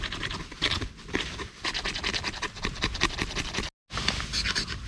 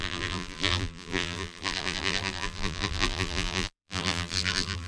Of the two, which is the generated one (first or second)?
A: second